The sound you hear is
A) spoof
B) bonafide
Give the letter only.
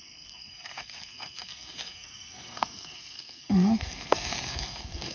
A